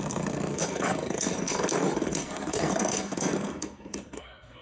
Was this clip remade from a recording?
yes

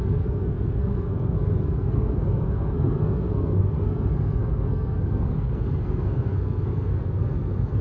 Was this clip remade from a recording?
yes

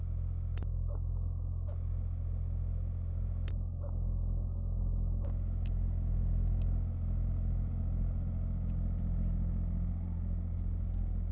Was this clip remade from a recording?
no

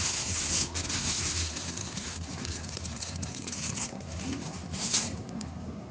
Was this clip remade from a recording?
yes